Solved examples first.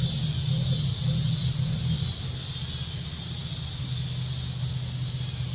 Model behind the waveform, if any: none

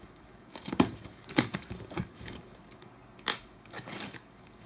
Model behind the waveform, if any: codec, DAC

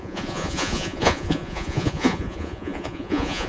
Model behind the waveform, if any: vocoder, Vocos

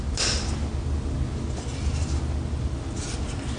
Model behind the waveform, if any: none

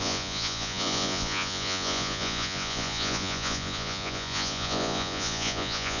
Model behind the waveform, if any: vocoder, Vocos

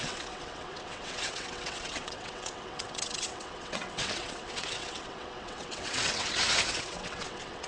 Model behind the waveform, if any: vocoder, WaveNeXt